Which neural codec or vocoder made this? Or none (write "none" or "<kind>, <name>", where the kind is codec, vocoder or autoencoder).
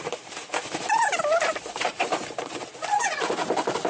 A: vocoder, BigVGAN v2